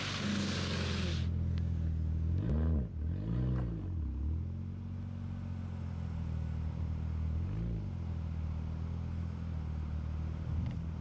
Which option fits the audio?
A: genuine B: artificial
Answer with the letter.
A